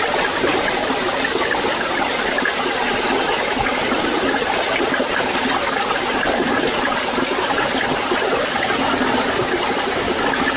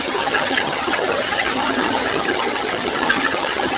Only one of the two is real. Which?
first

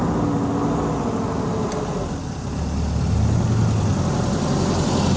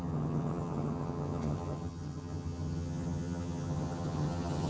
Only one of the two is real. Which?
first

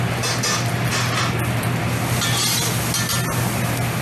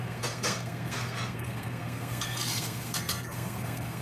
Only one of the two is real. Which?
first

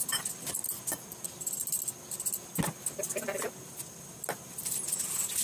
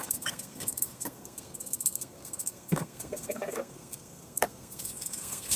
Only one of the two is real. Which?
first